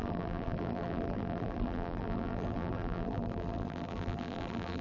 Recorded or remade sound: remade